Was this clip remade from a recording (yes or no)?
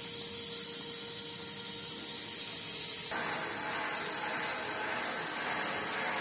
no